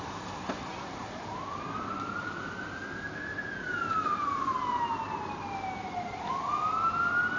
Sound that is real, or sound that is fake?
real